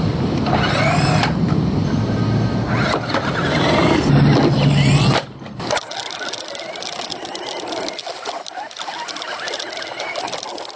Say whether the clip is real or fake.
real